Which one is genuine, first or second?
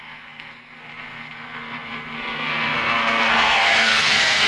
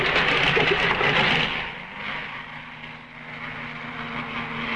second